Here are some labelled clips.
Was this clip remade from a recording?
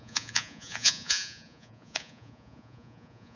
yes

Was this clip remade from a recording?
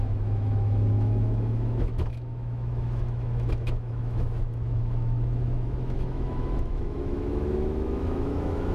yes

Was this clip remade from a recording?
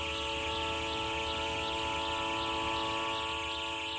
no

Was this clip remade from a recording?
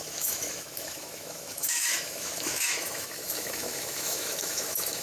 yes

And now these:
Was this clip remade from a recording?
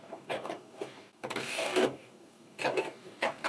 yes